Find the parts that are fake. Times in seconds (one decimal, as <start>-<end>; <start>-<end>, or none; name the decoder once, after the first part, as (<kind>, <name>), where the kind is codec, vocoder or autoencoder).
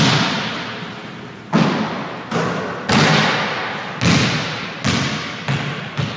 none